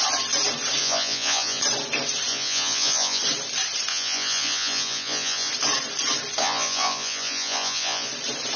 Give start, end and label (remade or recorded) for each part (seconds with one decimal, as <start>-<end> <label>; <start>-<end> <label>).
0.0-0.8 recorded; 0.8-1.6 remade; 1.6-2.3 recorded; 2.3-3.2 remade; 3.2-3.9 recorded; 3.9-5.5 remade; 5.5-6.4 recorded; 6.4-8.1 remade; 8.1-8.6 recorded